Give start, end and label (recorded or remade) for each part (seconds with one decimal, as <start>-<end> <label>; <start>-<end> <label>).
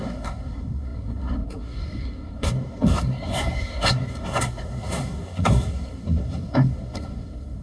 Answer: 0.0-7.6 remade